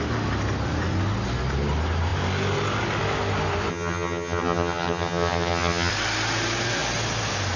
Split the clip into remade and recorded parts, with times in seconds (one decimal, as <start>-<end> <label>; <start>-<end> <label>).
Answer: 0.0-3.7 recorded; 3.7-5.9 remade; 5.9-7.6 recorded